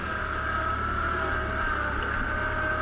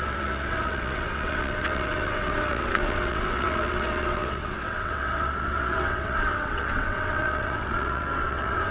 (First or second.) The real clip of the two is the first